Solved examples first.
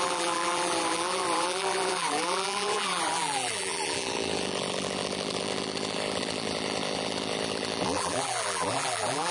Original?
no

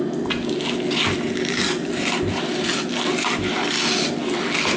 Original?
yes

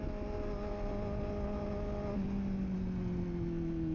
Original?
yes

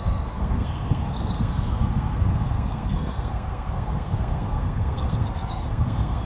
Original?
no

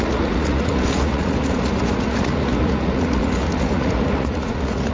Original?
no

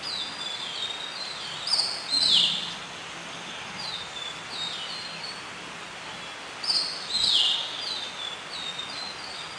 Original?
yes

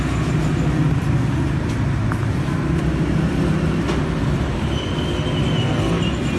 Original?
yes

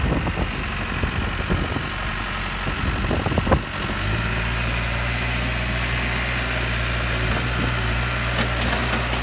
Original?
yes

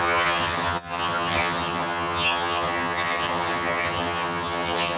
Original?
no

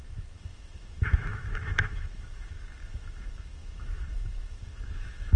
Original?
no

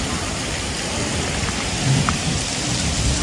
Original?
yes